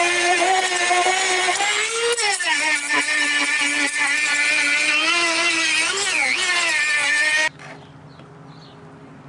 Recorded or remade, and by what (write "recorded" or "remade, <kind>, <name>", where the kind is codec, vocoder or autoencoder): recorded